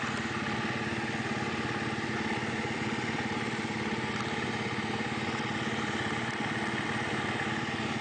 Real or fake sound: real